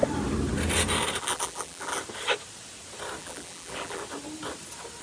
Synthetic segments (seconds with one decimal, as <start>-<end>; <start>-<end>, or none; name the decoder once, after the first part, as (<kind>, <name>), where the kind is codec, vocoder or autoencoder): 1.2-2.0 (vocoder, BigVGAN v2); 3.2-4.0